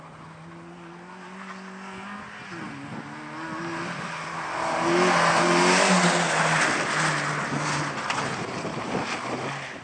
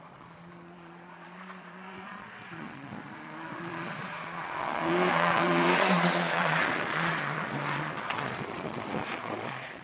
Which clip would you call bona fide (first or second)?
first